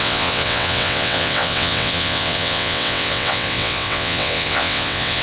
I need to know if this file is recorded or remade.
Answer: remade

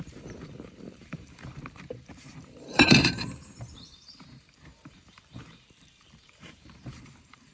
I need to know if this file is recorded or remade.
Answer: remade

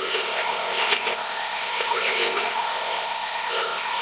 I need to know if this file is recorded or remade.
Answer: remade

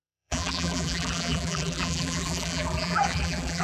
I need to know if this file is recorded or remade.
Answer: remade